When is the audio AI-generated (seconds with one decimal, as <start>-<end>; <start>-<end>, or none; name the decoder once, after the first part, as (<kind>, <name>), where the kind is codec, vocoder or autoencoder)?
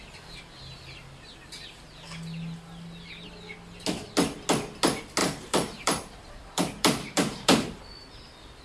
5.2-7.8 (vocoder, BigVGAN v2)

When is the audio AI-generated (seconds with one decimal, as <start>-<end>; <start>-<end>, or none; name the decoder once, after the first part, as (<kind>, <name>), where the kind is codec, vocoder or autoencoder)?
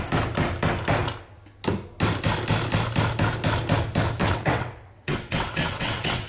4.2-6.3 (vocoder, WaveNeXt)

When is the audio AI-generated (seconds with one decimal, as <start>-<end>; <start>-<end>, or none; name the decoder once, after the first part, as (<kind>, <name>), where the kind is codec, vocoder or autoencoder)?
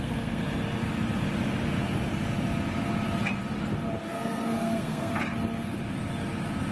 0.0-0.4 (codec, SNAC); 4.0-5.1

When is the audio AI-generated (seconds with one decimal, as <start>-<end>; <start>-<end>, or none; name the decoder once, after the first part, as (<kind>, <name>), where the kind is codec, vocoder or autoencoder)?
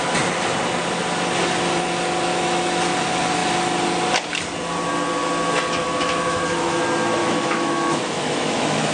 2.3-2.8 (autoencoder, DAC-VAE); 5.8-6.8; 7.2-8.9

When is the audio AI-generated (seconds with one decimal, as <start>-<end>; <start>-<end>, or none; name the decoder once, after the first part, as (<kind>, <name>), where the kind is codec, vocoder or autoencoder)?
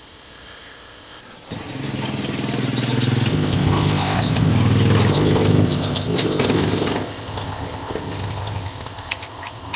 0.0-1.2 (codec, ZipCodec); 3.3-4.5; 5.1-9.8